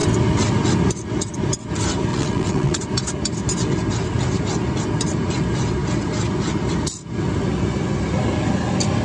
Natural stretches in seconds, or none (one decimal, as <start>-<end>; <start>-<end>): 0.0-2.1; 2.8-9.0